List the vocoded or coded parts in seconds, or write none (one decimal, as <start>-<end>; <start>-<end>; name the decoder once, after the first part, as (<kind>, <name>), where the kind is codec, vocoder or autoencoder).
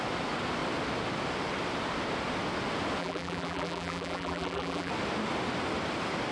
3.0-4.9 (vocoder, BigVGAN v2)